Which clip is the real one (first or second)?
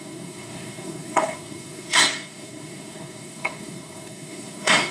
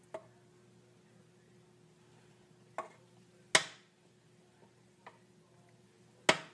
second